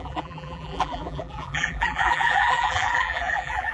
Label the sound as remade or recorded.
remade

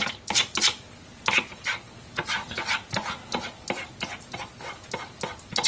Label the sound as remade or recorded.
recorded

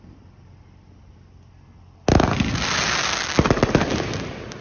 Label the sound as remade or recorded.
recorded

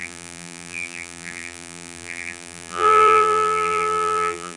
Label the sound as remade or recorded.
remade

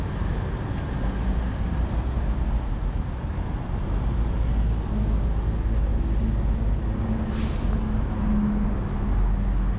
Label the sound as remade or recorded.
recorded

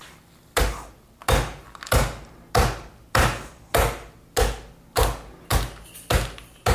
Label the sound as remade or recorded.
recorded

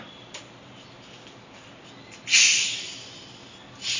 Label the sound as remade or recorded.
recorded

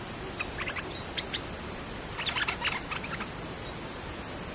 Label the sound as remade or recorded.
recorded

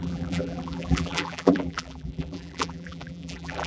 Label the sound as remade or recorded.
remade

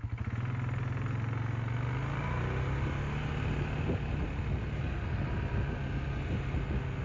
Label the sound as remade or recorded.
recorded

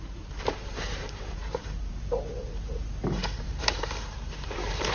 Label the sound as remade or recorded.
remade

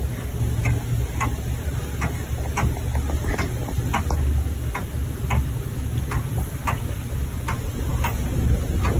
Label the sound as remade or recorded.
recorded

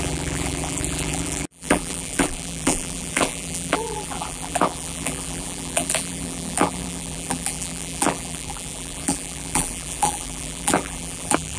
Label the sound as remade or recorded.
remade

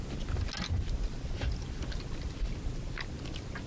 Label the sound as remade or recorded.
recorded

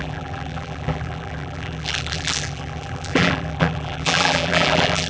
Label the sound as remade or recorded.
remade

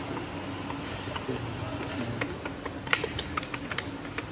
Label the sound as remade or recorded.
recorded